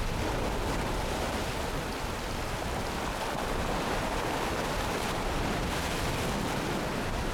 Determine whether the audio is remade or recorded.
recorded